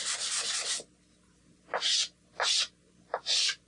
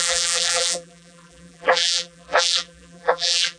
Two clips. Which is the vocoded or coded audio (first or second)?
second